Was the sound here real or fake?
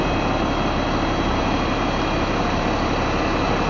real